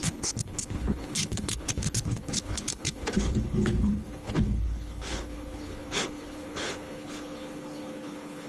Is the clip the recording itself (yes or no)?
no